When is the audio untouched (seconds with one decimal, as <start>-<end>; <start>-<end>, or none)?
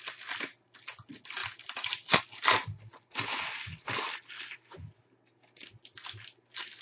0.0-6.8